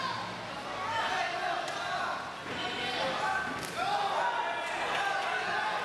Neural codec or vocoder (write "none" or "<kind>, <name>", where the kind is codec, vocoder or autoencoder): none